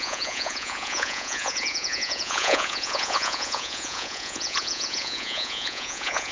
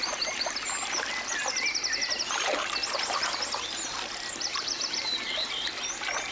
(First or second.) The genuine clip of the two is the second